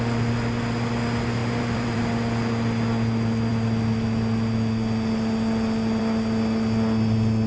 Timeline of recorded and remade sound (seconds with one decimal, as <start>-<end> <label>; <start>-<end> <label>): 0.0-1.4 recorded; 1.4-2.0 remade; 2.0-7.5 recorded